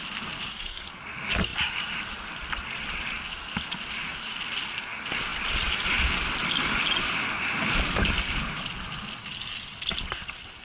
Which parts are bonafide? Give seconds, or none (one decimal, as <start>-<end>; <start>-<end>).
0.0-0.5; 1.0-10.6

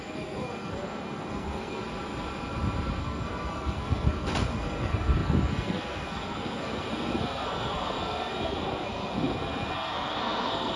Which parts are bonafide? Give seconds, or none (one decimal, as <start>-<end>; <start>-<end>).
1.8-3.0

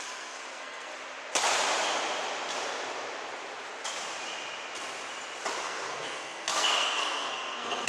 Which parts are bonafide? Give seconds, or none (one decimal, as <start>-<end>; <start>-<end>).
0.9-5.6

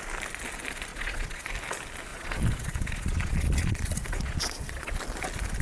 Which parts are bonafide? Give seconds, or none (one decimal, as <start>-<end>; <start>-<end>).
0.0-0.9; 1.5-2.1; 4.9-5.6